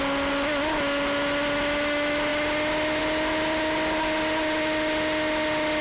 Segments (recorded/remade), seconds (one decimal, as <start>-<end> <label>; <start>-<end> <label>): 0.0-5.8 recorded